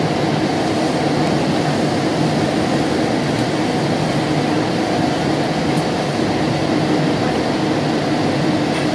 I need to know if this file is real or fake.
real